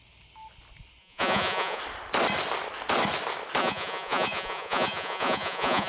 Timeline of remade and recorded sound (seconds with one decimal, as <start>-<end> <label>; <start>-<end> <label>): 0.0-1.0 recorded; 1.0-1.8 remade; 1.8-3.6 recorded; 3.6-5.9 remade